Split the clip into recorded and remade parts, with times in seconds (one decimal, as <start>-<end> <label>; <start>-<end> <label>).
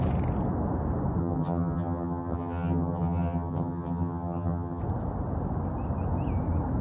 0.0-1.2 recorded; 1.2-4.8 remade; 4.8-6.8 recorded